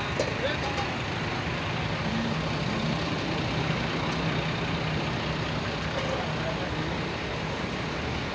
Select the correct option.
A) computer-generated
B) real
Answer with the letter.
B